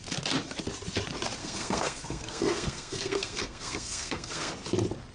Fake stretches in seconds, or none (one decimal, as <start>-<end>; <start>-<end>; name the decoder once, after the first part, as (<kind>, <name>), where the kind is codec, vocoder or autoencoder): 1.4-4.5 (codec, SNAC)